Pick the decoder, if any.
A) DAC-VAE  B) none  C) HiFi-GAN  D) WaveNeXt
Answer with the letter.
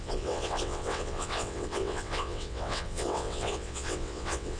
D